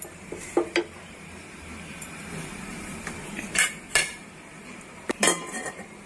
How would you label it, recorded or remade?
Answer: remade